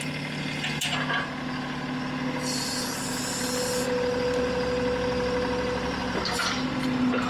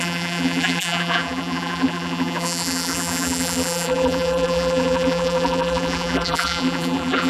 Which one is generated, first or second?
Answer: second